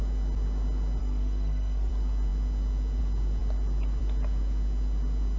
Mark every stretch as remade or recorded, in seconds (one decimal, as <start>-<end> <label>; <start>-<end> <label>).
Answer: 0.0-1.0 recorded; 1.0-1.9 remade; 1.9-5.4 recorded